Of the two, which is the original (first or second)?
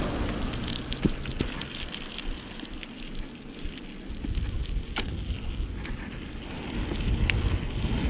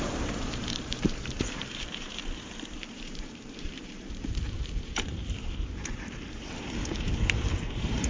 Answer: first